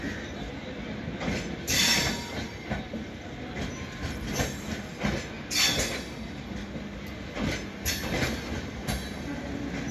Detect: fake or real real